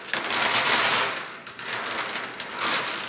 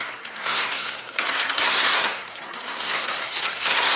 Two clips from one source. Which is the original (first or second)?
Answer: first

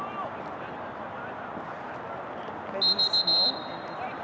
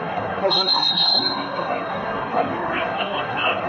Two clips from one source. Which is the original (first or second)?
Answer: first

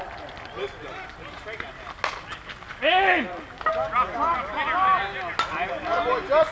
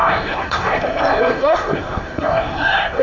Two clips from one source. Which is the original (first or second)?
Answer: first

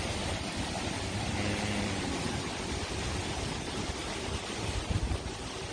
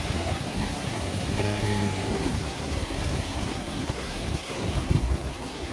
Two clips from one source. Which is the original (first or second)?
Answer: first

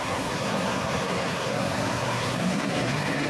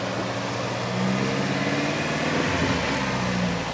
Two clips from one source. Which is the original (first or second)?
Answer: second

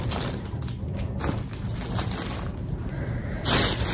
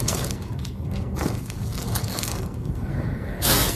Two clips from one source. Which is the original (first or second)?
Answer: first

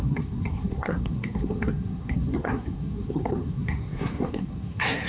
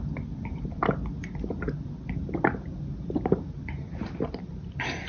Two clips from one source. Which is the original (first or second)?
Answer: second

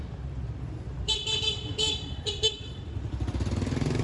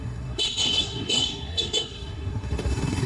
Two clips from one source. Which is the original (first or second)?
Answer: first